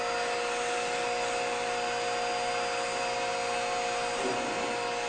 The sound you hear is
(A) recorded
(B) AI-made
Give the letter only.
A